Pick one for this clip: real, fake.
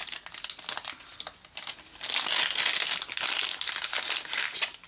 real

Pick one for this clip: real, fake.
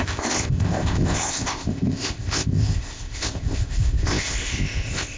fake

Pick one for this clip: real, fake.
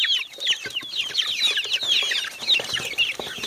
real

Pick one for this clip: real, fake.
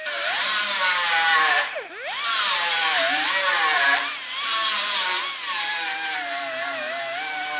fake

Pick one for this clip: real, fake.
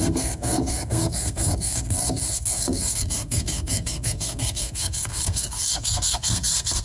fake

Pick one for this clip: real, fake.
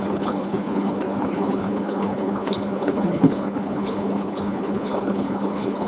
fake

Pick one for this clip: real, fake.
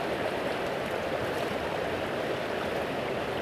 fake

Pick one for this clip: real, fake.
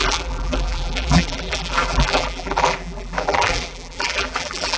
fake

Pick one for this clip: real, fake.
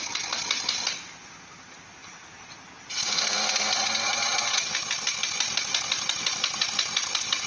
real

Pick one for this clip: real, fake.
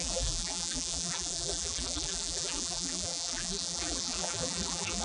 fake